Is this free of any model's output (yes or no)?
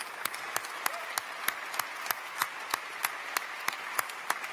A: yes